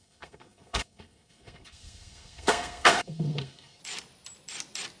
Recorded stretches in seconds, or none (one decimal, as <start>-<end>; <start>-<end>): 3.8-5.0